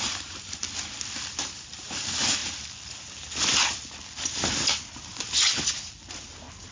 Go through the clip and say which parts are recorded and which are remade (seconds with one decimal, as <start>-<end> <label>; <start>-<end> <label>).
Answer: 0.0-0.6 remade; 0.6-1.3 recorded; 1.3-2.4 remade; 2.4-6.7 recorded